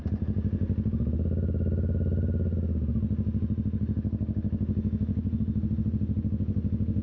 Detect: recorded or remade recorded